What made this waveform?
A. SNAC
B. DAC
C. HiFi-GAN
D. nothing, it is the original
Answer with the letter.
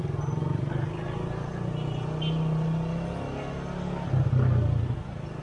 D